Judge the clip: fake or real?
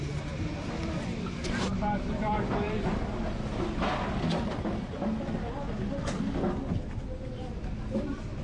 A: real